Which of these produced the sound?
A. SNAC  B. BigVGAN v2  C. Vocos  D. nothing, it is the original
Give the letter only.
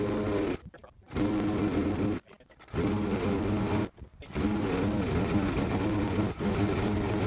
D